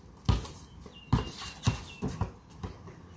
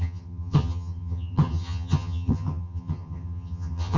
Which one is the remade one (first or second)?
second